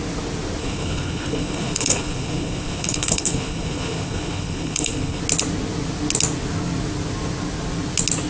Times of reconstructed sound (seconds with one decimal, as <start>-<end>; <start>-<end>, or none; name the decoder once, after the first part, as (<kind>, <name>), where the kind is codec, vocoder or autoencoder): 0.6-5.2 (codec, HILCodec)